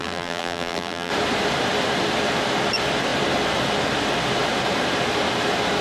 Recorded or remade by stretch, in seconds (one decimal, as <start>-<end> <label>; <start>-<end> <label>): 0.0-1.1 remade; 1.1-5.8 recorded